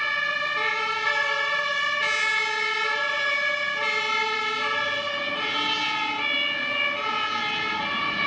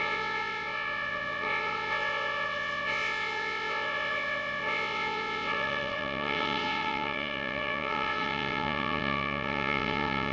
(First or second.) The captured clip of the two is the first